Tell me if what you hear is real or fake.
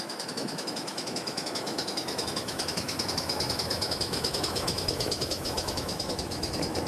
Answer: fake